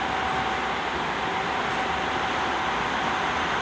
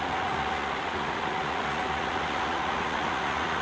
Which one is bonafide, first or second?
first